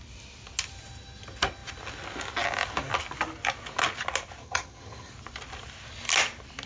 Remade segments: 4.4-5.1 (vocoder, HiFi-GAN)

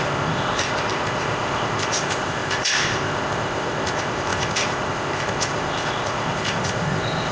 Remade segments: 0.0-7.3 (codec, ZipCodec)

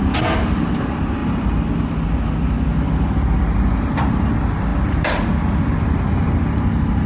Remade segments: none

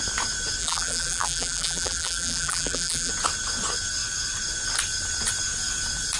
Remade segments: 0.6-3.1 (vocoder, BigVGAN v2)

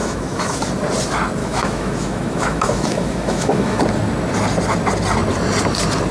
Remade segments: 0.0-0.6 (autoencoder, DAC-VAE); 1.4-3.8